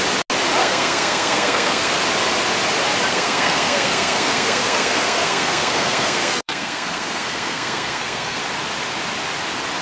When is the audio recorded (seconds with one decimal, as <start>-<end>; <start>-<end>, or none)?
0.0-0.6; 2.0-3.1; 8.4-9.8